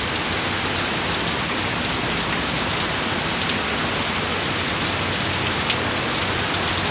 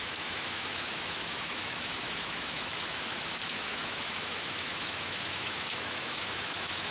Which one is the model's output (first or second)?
second